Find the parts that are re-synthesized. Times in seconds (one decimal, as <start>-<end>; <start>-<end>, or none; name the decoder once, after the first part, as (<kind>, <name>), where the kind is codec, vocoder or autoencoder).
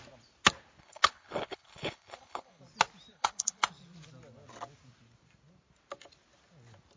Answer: 0.8-2.6 (codec, HILCodec); 3.1-3.7